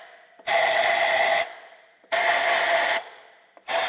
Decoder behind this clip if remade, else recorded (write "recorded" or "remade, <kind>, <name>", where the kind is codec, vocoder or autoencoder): recorded